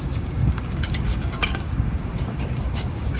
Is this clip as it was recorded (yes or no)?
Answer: no